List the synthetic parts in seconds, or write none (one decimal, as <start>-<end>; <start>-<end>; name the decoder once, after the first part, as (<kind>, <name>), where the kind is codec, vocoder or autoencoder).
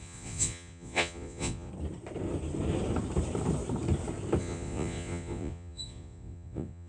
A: 0.0-1.7 (vocoder, Vocos); 4.4-6.9